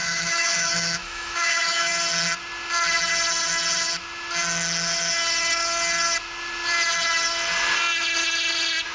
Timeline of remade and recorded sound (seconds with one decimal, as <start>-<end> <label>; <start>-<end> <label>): 0.0-1.9 remade; 1.9-8.9 recorded